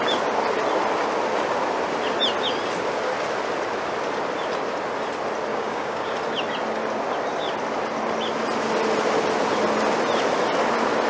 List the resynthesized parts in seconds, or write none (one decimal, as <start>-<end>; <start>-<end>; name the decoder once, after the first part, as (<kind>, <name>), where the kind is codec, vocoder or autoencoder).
5.5-6.1 (codec, DAC)